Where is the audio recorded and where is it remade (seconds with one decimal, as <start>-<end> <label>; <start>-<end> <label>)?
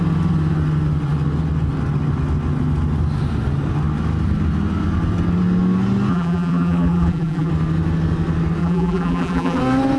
0.0-6.1 recorded; 6.1-7.5 remade; 7.5-8.6 recorded; 8.6-9.6 remade; 9.6-10.0 recorded